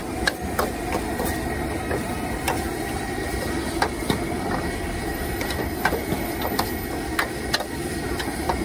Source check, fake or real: real